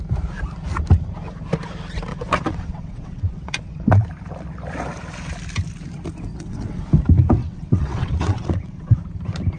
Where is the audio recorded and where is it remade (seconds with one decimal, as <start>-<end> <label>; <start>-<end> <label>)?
0.0-2.1 recorded; 2.1-3.9 remade; 3.9-6.3 recorded; 6.3-6.8 remade; 6.8-7.4 recorded; 7.4-9.0 remade; 9.0-9.6 recorded